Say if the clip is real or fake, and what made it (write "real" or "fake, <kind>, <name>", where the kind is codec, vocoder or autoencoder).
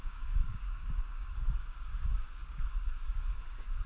fake, codec, DAC